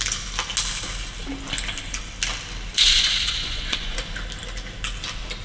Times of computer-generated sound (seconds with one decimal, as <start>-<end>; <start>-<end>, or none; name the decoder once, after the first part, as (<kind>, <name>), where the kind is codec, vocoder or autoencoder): 2.7-4.0 (vocoder, Vocos)